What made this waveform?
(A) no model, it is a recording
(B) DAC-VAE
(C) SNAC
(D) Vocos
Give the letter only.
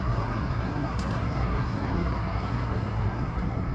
C